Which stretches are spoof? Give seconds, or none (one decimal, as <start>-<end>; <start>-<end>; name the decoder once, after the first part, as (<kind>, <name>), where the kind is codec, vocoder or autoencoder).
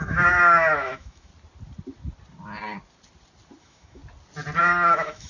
0.0-1.3 (autoencoder, DAC-VAE); 3.6-4.0; 4.6-5.3